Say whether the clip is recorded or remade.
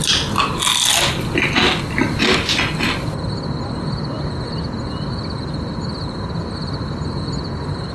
recorded